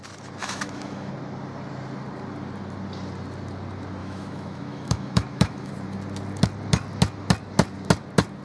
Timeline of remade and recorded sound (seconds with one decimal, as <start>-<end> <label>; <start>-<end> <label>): 0.0-0.4 recorded; 0.4-1.1 remade; 1.1-4.0 recorded; 4.0-5.7 remade; 5.7-8.4 recorded